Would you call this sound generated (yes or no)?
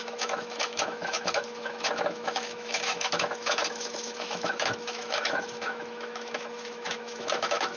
yes